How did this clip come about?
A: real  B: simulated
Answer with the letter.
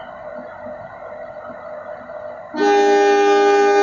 A